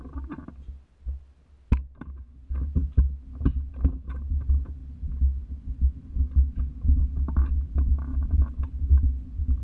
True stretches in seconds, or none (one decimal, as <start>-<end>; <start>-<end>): 0.0-9.6